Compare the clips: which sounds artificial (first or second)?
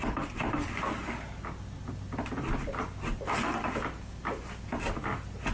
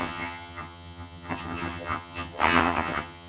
second